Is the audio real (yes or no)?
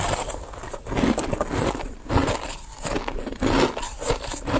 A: yes